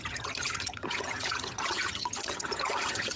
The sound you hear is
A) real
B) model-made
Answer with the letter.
B